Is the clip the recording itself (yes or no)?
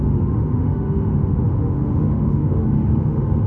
no